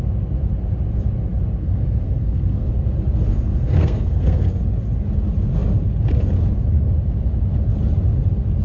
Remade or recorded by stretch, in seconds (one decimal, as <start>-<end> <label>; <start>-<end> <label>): 0.0-1.6 recorded; 1.6-2.7 remade; 2.7-3.3 recorded; 3.3-4.6 remade; 4.6-8.6 recorded